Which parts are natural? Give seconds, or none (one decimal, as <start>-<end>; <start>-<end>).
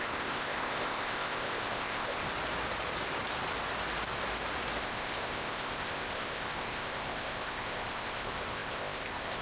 2.3-4.8